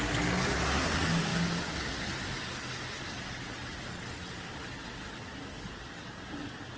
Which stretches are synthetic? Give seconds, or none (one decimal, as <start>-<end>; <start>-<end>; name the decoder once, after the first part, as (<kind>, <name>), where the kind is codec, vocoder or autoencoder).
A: none